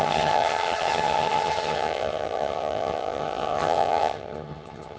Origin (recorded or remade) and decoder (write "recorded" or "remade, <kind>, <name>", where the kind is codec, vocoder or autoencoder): remade, vocoder, HiFi-GAN